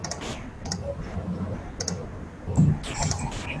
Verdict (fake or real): real